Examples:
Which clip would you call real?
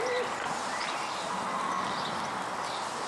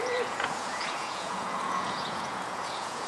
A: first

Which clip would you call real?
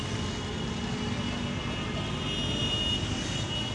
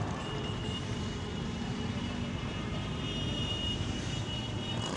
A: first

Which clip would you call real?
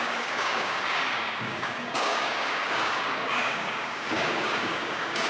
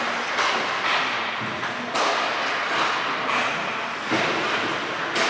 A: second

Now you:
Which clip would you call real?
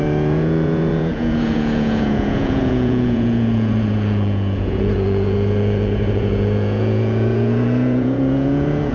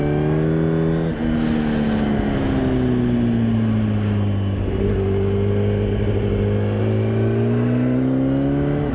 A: second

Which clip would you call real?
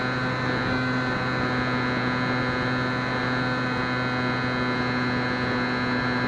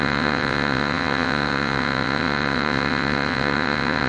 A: first